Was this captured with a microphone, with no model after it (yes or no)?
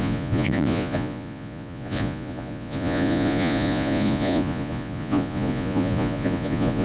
no